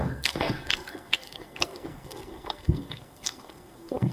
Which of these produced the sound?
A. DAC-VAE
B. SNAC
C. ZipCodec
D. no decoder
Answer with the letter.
B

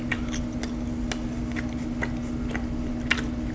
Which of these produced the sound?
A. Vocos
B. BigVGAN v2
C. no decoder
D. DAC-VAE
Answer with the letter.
C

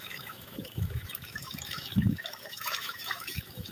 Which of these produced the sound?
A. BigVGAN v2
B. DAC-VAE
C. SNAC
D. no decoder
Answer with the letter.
B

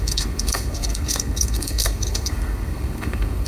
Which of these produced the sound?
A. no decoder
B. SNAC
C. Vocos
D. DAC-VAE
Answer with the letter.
B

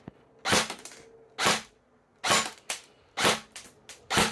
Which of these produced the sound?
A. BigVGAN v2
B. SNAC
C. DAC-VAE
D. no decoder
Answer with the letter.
D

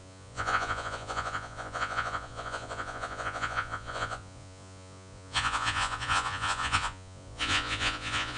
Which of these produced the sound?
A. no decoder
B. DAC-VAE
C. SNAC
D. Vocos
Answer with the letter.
D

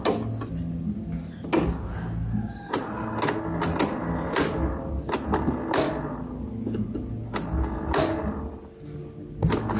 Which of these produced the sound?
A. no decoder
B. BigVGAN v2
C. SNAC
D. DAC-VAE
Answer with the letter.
A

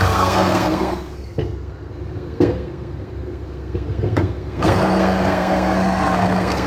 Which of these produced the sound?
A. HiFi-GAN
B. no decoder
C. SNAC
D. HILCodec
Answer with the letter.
C